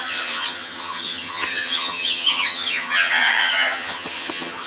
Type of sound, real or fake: fake